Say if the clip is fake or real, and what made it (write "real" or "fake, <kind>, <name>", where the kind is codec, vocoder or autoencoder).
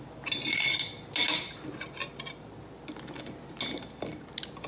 real